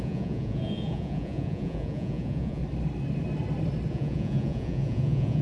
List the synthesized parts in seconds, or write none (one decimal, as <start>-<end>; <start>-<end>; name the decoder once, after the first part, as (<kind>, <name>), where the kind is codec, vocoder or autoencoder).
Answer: 0.0-2.6 (vocoder, Vocos); 3.9-5.4